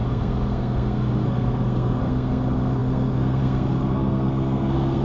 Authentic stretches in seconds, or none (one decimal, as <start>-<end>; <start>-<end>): none